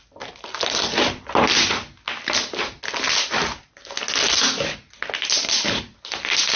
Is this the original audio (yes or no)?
yes